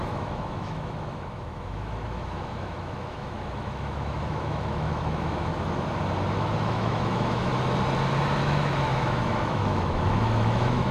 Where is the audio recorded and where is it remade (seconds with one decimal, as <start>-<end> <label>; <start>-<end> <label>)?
0.0-5.5 remade; 5.5-6.3 recorded; 6.3-7.5 remade; 7.5-8.4 recorded; 8.4-10.9 remade